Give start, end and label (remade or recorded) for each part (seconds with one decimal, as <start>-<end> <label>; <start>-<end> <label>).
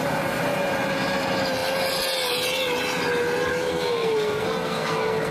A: 0.0-3.5 recorded; 3.5-5.3 remade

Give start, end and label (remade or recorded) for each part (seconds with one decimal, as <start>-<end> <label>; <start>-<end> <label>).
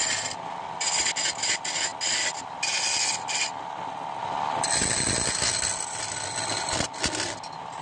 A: 0.0-7.8 recorded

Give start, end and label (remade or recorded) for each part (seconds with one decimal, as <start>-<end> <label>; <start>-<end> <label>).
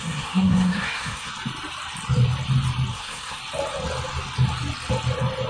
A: 0.0-1.3 remade; 1.3-2.9 recorded; 2.9-3.4 remade; 3.4-5.5 recorded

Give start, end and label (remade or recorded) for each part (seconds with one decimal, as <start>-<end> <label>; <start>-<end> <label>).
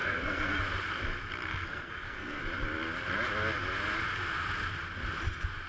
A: 0.0-0.6 remade; 0.6-1.5 recorded; 1.5-2.4 remade; 2.4-5.7 recorded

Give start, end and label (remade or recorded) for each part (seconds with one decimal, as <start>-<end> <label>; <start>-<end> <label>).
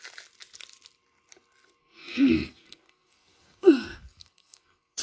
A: 0.0-1.8 recorded; 1.8-5.0 remade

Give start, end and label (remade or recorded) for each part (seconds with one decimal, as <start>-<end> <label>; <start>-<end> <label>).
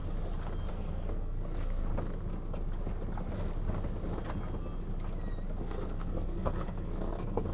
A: 0.0-0.7 recorded; 0.7-1.9 remade; 1.9-5.6 recorded; 5.6-7.5 remade